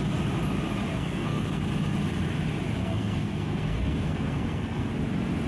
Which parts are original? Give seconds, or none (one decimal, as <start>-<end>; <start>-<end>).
0.0-0.9; 1.6-2.8; 4.9-5.5